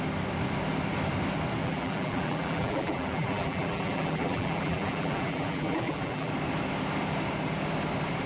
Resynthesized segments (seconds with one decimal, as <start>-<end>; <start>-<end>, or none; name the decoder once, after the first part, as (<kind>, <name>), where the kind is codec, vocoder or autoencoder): 1.6-6.3 (vocoder, BigVGAN v2)